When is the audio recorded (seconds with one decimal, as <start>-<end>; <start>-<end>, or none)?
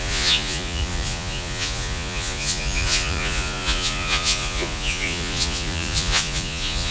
none